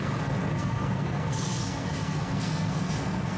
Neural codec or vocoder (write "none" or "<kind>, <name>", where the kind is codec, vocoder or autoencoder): codec, SNAC